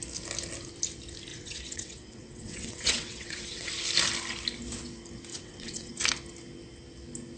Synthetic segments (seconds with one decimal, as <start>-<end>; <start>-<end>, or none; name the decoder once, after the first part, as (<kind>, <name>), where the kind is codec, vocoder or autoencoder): 1.3-3.7 (vocoder, WaveNeXt); 5.3-5.9